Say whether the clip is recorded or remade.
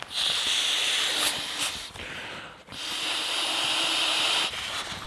recorded